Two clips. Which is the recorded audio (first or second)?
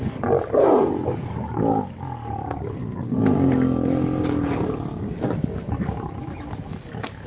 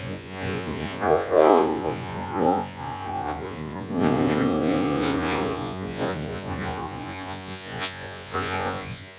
first